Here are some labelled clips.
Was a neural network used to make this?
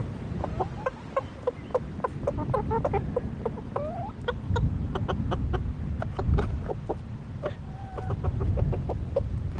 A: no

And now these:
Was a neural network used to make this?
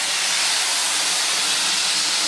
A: no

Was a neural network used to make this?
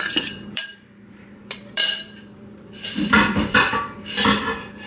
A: yes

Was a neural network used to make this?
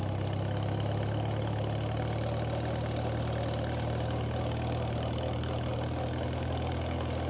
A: no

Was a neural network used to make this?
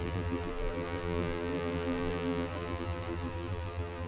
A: yes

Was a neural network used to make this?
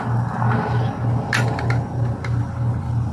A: no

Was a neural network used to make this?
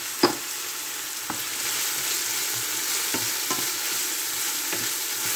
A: no